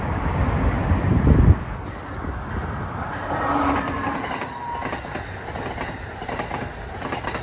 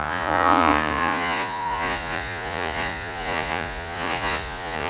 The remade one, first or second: second